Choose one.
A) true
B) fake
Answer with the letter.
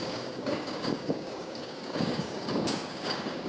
B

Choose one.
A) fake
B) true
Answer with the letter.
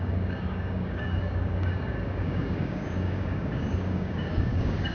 A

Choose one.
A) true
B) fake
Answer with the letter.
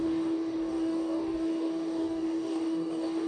B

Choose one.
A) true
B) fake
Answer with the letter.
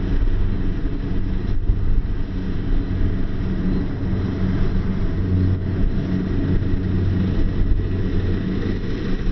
A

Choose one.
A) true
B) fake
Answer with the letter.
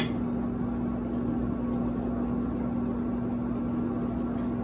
A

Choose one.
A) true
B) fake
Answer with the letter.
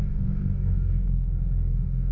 B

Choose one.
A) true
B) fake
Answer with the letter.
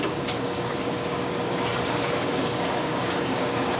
B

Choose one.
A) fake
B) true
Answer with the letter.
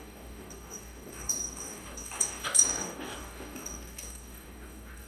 A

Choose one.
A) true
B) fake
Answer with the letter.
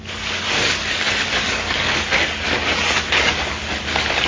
B